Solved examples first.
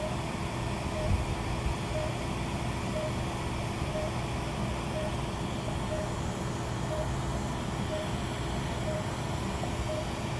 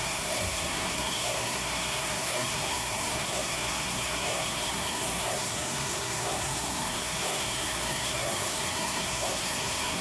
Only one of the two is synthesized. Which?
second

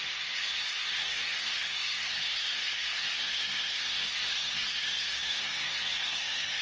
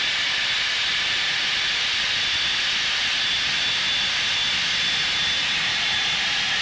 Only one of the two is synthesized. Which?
first